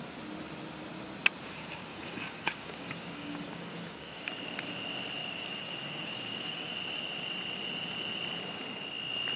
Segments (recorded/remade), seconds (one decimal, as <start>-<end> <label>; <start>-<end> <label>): 0.0-1.9 recorded; 1.9-4.5 remade; 4.5-5.2 recorded; 5.2-6.7 remade; 6.7-9.4 recorded